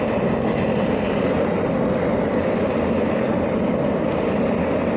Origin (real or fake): real